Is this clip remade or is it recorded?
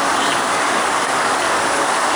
remade